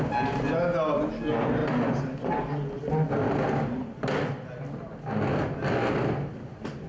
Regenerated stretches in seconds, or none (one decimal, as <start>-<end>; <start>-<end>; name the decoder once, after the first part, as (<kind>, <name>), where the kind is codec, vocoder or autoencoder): none